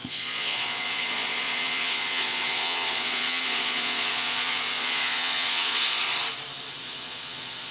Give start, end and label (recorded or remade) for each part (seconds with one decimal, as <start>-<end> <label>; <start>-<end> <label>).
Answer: 0.0-6.0 remade; 6.0-6.8 recorded; 6.8-7.7 remade

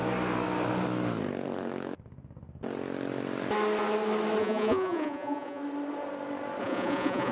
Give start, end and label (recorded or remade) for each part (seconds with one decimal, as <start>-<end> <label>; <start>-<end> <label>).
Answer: 0.0-4.4 recorded; 4.4-5.6 remade; 5.6-6.6 recorded; 6.6-7.3 remade

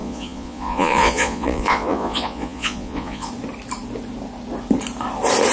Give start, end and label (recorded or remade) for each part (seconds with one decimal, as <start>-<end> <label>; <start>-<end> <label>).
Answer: 0.0-3.3 remade; 3.3-5.5 recorded

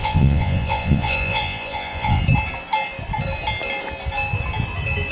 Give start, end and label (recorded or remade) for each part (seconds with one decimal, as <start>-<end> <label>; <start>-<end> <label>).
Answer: 0.0-2.2 remade; 2.2-5.1 recorded

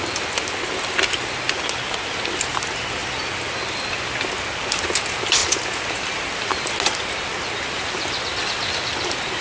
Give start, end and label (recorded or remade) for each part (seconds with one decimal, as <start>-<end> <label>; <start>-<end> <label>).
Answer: 0.0-9.4 recorded

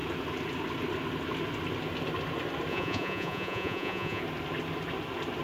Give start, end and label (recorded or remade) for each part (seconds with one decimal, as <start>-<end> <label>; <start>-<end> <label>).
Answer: 0.0-2.7 recorded; 2.7-4.2 remade; 4.2-5.4 recorded

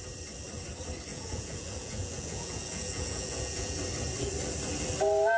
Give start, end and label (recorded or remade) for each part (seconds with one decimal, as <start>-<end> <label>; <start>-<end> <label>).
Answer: 0.0-1.1 recorded; 1.1-3.8 remade; 3.8-5.4 recorded

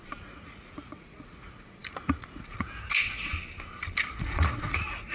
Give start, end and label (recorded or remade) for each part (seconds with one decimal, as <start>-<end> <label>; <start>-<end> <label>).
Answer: 0.0-3.3 remade; 3.3-4.1 recorded; 4.1-5.1 remade